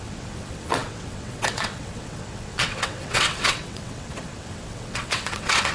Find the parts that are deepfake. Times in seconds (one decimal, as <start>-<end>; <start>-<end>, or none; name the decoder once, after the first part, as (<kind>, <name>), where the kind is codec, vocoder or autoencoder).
0.0-5.7 (vocoder, WaveNeXt)